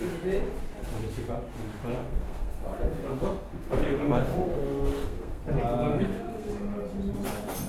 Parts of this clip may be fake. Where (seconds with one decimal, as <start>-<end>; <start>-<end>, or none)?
2.0-5.5; 5.9-6.8